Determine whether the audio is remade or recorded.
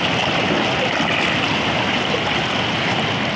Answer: recorded